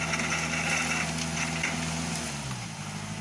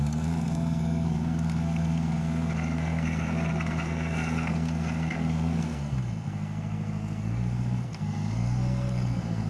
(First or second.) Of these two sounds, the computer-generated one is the second